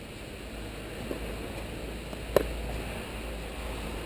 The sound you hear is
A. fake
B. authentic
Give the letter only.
B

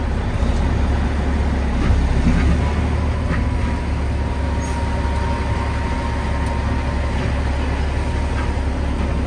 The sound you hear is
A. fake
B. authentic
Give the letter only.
B